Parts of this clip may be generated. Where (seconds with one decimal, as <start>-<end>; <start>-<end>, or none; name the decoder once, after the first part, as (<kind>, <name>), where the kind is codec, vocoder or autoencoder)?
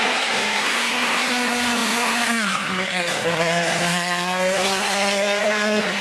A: 0.0-6.0 (codec, SNAC)